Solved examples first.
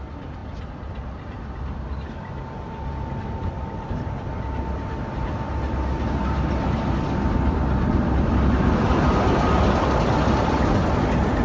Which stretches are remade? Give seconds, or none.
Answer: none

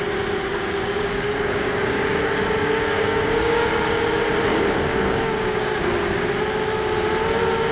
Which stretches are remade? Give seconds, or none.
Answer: 0.5-3.7 (codec, DAC); 4.5-5.8

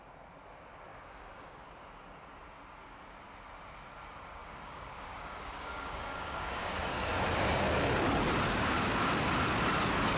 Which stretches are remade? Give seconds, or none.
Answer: 0.9-1.6 (codec, DAC); 4.4-7.1

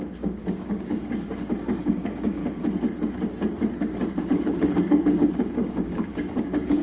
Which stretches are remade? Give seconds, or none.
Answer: 0.0-2.4 (codec, DAC); 4.2-6.8

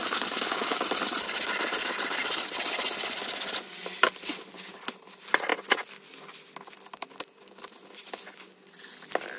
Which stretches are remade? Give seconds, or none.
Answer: 0.0-0.8 (codec, DAC)

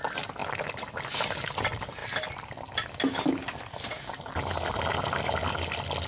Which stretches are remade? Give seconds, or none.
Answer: none

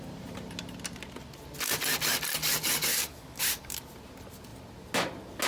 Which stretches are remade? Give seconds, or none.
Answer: 2.9-3.8 (codec, DAC)